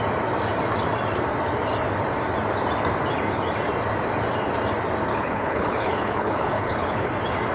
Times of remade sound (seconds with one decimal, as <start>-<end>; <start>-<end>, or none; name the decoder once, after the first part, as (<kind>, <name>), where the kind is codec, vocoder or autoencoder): 5.1-7.1 (codec, HILCodec)